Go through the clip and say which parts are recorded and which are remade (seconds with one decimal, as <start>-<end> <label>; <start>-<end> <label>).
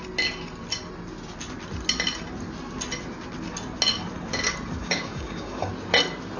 0.0-4.8 recorded; 4.8-5.7 remade; 5.7-6.4 recorded